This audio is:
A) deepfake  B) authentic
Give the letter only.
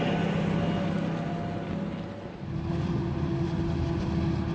B